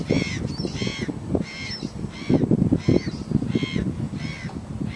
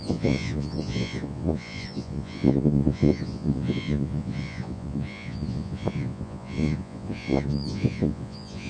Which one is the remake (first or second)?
second